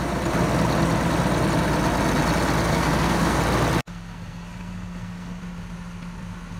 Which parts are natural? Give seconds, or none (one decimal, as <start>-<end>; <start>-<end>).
0.0-2.7; 3.4-3.8; 5.4-6.6